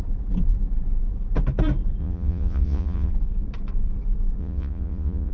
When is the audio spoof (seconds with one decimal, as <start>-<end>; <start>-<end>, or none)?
2.0-3.1; 4.4-5.3